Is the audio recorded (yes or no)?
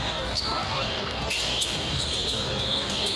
no